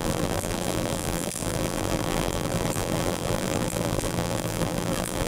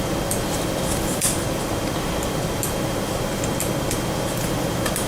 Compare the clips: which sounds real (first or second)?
second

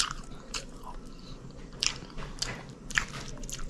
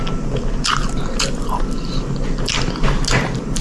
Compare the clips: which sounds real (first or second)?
second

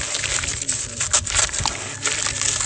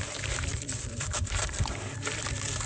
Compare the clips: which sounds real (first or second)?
first